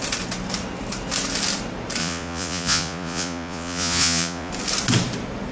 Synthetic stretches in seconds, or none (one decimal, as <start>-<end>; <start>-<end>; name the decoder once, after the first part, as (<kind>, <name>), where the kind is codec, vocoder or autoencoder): 2.0-4.5 (vocoder, Vocos)